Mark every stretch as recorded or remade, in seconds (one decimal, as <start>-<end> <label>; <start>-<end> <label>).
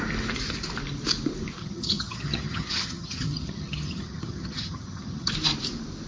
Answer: 0.0-1.6 recorded; 1.6-5.3 remade; 5.3-6.1 recorded